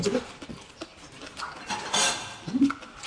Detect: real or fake real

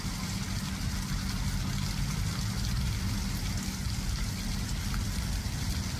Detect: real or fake real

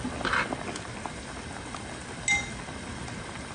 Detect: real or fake real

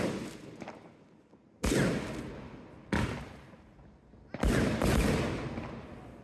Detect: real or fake real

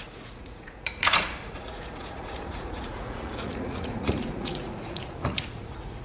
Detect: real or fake fake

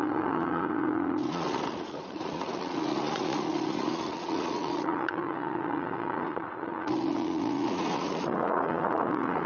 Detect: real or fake fake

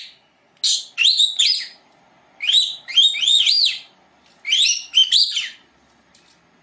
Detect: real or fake real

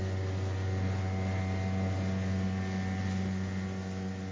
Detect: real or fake real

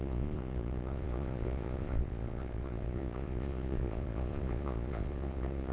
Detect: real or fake fake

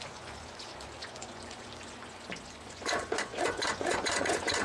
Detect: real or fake fake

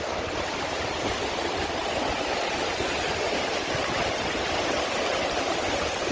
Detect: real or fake real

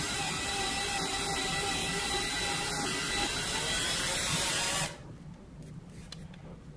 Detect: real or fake real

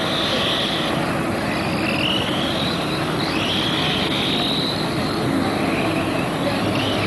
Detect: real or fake real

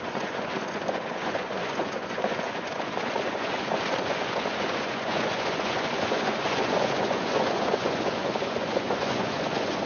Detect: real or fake fake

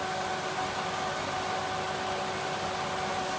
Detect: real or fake real